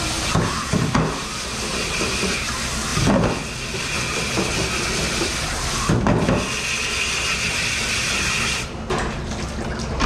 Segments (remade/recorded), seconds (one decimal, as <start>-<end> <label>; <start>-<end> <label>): 0.0-2.9 recorded; 2.9-5.8 remade; 5.8-10.1 recorded